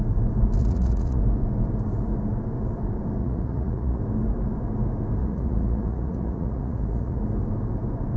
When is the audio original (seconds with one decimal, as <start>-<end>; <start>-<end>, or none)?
0.0-0.6; 1.2-3.2; 4.0-5.2; 7.2-8.2